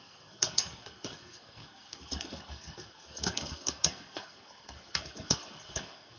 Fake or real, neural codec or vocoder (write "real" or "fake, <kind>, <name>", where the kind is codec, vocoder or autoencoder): fake, codec, SNAC